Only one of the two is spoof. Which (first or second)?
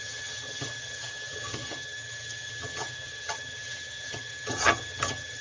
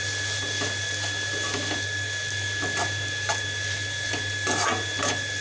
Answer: first